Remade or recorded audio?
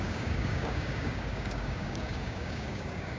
remade